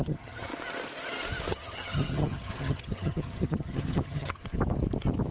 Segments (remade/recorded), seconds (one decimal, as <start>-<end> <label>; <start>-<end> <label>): 0.0-0.5 remade; 0.5-1.5 recorded; 1.5-4.4 remade; 4.4-5.3 recorded